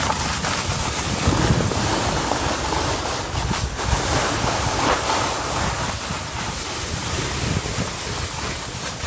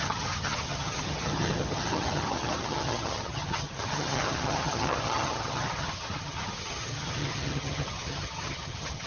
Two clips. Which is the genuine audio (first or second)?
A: first